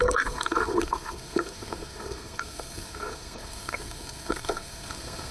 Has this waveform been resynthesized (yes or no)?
yes